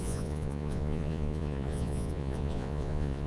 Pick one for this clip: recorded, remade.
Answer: remade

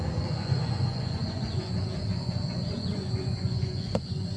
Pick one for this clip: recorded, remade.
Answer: remade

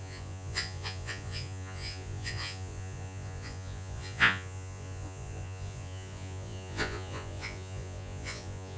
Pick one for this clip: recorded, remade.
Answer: remade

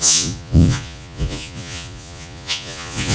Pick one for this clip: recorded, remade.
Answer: remade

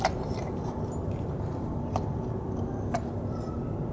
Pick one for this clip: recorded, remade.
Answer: recorded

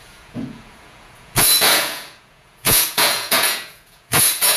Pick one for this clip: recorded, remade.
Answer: remade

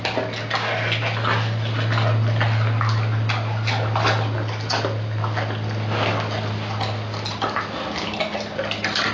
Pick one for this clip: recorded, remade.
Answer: recorded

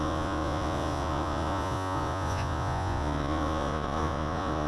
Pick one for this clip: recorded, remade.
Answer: remade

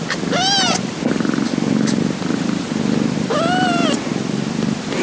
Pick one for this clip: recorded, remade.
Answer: recorded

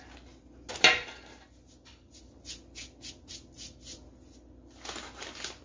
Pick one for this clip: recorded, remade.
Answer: recorded